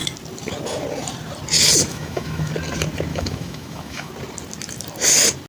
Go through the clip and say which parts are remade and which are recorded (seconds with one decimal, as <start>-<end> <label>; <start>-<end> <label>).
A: 0.0-1.9 recorded; 1.9-2.5 remade; 2.5-3.1 recorded; 3.1-4.1 remade; 4.1-5.5 recorded